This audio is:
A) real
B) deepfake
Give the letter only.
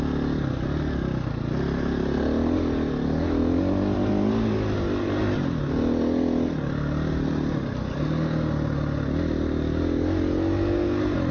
A